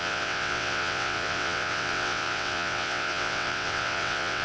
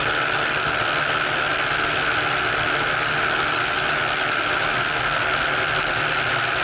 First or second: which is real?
second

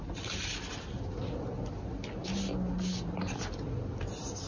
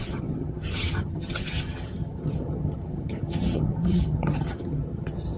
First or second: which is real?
first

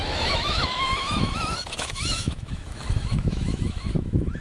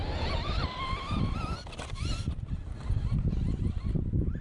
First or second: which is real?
second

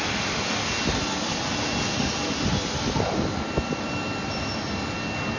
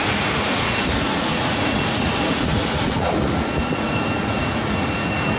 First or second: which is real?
first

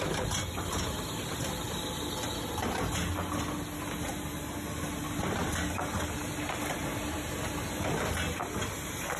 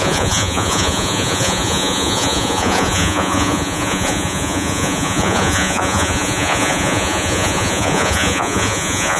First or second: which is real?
first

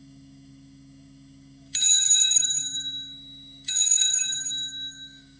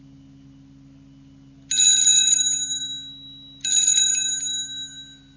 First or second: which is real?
second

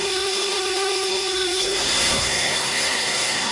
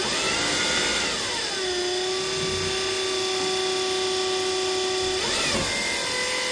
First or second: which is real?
second